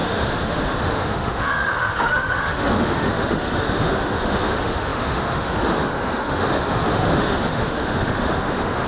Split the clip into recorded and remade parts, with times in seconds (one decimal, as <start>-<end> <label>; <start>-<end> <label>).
0.0-8.9 remade